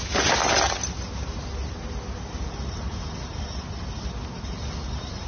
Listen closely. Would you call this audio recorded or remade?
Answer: recorded